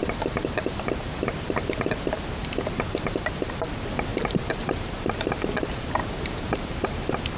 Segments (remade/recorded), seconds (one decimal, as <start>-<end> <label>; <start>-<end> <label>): 0.0-3.6 remade; 3.6-4.1 recorded; 4.1-7.4 remade